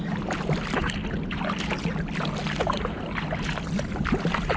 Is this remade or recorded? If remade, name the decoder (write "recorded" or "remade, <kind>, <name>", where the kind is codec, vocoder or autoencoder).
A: recorded